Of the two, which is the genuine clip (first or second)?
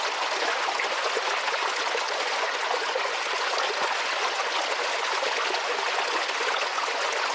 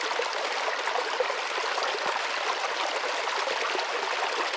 second